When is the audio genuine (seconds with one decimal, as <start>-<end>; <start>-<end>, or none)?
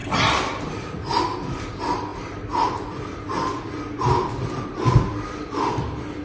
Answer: 0.0-6.2